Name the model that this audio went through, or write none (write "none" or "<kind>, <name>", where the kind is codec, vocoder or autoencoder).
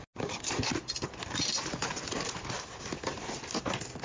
none